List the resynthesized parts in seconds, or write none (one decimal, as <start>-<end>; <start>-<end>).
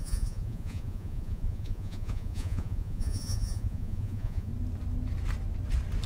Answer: 0.0-4.5